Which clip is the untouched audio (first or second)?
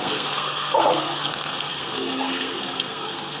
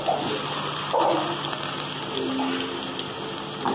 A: second